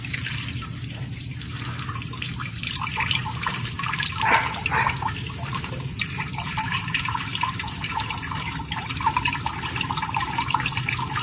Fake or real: fake